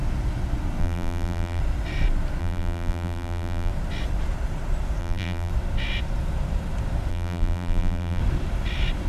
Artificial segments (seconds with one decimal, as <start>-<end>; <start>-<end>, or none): 0.8-1.6; 2.4-3.7; 5.0-5.5; 7.1-8.2